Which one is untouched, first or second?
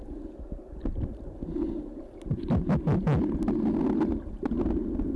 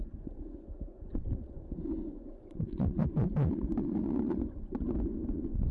first